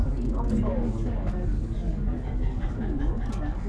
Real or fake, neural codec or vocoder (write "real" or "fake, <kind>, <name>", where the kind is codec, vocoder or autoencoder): fake, codec, DAC